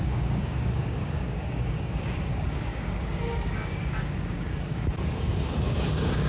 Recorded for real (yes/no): no